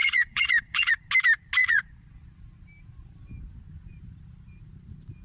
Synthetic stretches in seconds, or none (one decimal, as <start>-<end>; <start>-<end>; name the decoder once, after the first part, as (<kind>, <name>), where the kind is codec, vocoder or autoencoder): 0.0-0.9 (vocoder, Vocos); 1.6-2.1